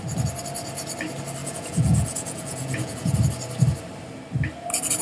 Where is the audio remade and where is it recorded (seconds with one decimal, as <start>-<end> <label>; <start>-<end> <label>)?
0.0-1.4 recorded; 1.4-3.2 remade; 3.2-5.0 recorded